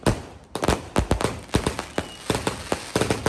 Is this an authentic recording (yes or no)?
yes